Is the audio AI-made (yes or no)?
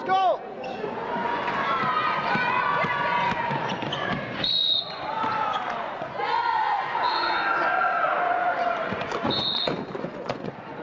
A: yes